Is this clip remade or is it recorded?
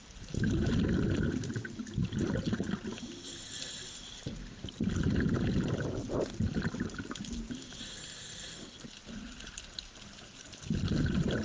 recorded